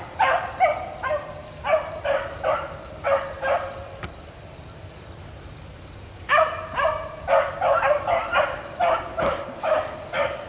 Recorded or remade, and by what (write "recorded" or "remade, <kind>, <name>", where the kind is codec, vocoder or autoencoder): remade, vocoder, BigVGAN v2